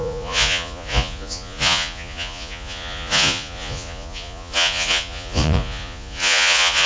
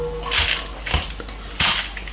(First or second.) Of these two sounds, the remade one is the first